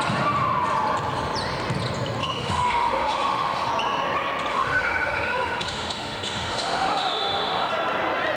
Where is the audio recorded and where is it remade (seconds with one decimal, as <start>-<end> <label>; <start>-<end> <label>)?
0.0-2.2 recorded; 2.2-3.7 remade; 3.7-4.5 recorded; 4.5-7.7 remade; 7.7-8.4 recorded

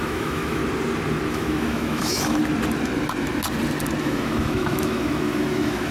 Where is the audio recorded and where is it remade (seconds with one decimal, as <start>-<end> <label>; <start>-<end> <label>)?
0.0-0.6 remade; 0.6-1.3 recorded; 1.3-2.4 remade; 2.4-4.0 recorded; 4.0-5.9 remade

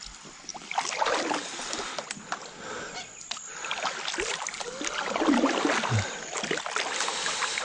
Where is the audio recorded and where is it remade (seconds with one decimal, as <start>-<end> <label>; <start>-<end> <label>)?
0.0-7.6 recorded

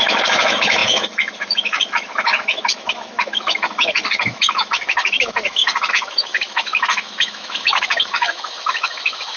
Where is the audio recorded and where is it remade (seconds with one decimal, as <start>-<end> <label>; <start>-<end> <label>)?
0.0-9.4 remade

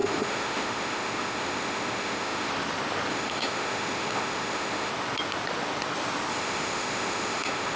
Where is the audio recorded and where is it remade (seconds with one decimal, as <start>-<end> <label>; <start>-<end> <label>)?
0.0-2.5 remade; 2.5-3.1 recorded; 3.1-4.9 remade; 4.9-6.3 recorded; 6.3-7.8 remade

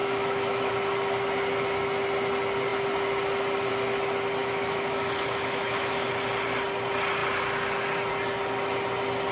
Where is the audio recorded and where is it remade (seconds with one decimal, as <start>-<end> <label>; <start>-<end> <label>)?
0.0-0.7 remade; 0.7-4.4 recorded; 4.4-6.1 remade; 6.1-9.3 recorded

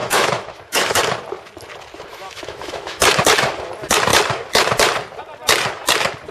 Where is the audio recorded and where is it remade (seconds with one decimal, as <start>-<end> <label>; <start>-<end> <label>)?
0.0-1.0 remade; 1.0-2.1 recorded; 2.1-3.0 remade; 3.0-6.3 recorded